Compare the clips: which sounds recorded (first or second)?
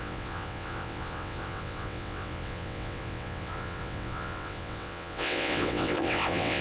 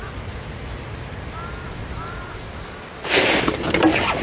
second